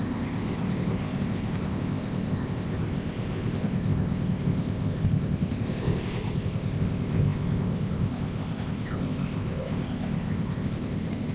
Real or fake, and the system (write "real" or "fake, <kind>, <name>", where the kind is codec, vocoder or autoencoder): fake, codec, ZipCodec